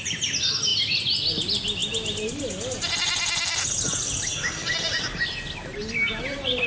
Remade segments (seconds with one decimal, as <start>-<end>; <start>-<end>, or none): none